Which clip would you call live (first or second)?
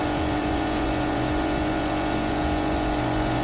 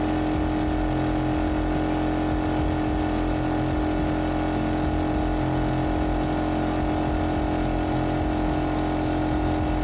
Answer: second